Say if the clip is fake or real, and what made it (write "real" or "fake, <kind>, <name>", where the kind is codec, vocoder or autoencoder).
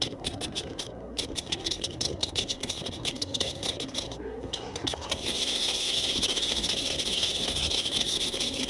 fake, codec, SNAC